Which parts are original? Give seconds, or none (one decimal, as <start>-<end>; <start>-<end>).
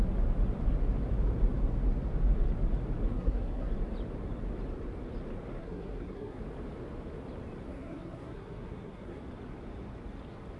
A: 0.0-3.1; 3.7-5.6; 6.4-7.7; 9.2-10.6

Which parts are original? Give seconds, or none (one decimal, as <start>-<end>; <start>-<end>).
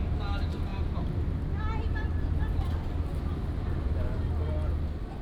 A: 0.0-0.7; 1.4-3.1; 4.2-5.2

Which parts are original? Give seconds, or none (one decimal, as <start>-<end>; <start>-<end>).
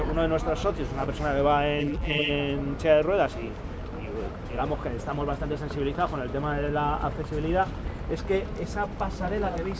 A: 0.0-1.8; 2.3-9.8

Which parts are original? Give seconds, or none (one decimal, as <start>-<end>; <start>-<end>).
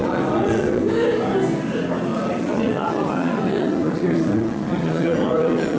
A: 0.8-2.1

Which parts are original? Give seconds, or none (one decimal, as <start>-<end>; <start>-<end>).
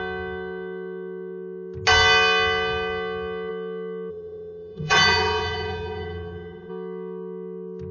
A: 0.0-4.1; 6.7-7.9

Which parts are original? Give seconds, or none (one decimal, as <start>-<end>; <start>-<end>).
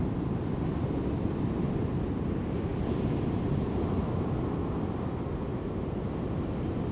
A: 0.0-6.9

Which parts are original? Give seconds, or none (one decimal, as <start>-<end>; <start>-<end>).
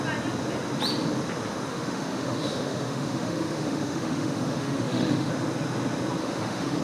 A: 0.0-1.7; 5.3-6.2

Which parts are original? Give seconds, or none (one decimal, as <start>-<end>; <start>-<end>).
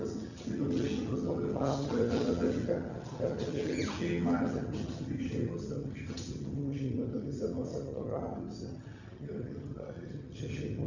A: none